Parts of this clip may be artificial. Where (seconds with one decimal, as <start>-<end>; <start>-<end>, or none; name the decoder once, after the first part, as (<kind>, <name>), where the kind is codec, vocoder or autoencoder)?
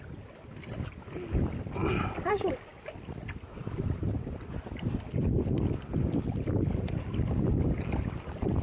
none